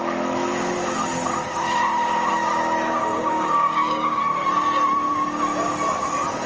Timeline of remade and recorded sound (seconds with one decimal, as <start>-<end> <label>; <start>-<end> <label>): 0.0-3.0 recorded; 3.0-4.2 remade; 4.2-6.5 recorded